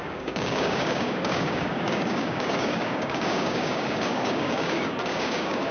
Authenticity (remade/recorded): remade